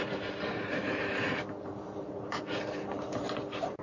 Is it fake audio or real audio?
fake